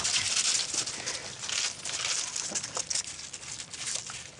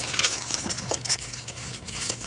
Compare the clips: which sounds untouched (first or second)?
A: first